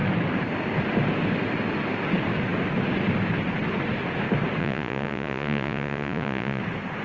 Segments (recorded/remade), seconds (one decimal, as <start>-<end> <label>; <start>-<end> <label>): 0.0-4.6 recorded; 4.6-6.6 remade; 6.6-7.0 recorded